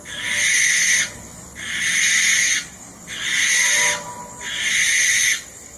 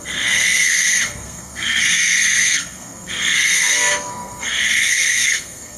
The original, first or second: first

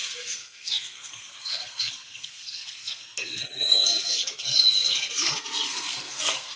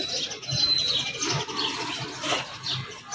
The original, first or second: second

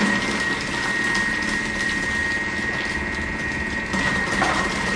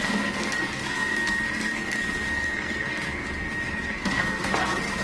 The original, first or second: first